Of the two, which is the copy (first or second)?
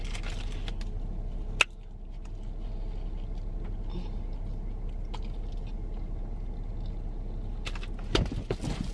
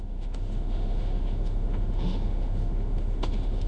second